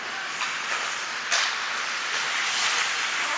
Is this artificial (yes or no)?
no